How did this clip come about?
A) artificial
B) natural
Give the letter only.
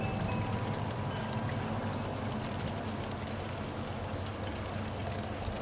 B